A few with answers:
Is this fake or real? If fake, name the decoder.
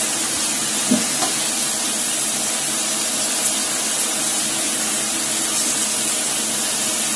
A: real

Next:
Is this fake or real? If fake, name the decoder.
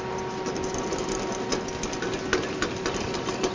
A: real